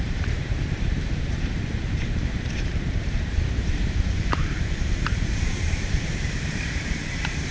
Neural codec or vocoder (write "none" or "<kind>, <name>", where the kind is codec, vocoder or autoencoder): vocoder, BigVGAN v2